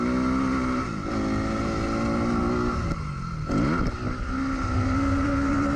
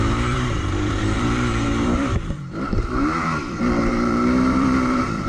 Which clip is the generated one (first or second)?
second